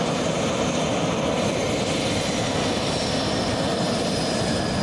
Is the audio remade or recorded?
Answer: recorded